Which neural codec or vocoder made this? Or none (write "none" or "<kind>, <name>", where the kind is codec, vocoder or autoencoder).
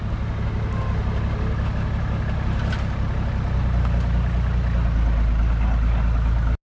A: none